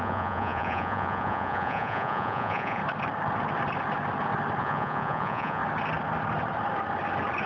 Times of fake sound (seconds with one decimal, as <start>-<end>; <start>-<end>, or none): 0.0-2.8; 4.6-5.6